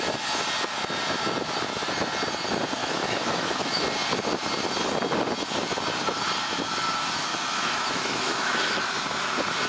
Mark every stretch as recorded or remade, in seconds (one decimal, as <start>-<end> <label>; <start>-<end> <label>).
0.0-2.8 recorded; 2.8-3.8 remade; 3.8-7.3 recorded; 7.3-8.8 remade; 8.8-9.7 recorded